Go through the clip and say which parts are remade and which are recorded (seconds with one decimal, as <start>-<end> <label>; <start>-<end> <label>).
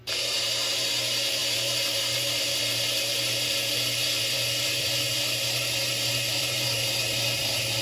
0.0-7.8 remade